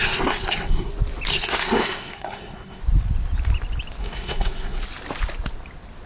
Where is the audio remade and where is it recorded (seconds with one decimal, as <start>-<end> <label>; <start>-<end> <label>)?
0.0-0.9 remade; 0.9-1.3 recorded; 1.3-2.8 remade; 2.8-4.0 recorded; 4.0-4.8 remade; 4.8-6.1 recorded